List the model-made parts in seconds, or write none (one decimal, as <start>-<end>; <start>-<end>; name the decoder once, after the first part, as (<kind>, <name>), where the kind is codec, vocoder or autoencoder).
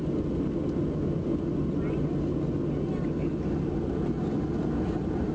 none